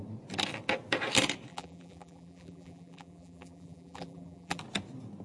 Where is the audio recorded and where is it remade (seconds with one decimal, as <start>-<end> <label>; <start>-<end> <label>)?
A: 0.0-1.5 recorded; 1.5-4.6 remade; 4.6-5.2 recorded